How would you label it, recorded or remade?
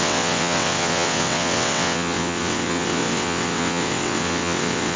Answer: remade